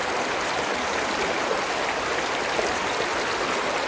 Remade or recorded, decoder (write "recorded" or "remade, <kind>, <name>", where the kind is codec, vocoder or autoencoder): recorded